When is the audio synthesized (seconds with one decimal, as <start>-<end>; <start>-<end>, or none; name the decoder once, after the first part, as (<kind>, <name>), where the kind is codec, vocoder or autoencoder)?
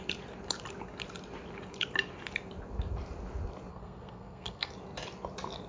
3.7-4.7 (codec, SNAC)